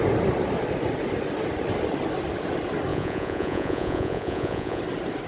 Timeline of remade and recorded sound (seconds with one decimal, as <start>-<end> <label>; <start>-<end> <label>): 0.0-2.9 recorded; 2.9-4.8 remade; 4.8-5.3 recorded